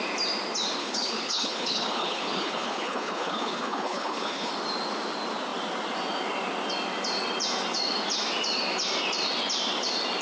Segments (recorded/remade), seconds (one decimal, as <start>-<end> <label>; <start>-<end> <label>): 0.0-0.8 recorded; 0.8-4.5 remade; 4.5-10.2 recorded